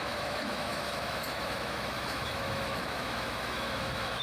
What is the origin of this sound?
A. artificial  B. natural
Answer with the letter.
A